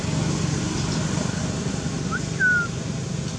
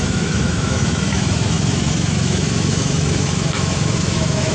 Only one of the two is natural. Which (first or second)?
first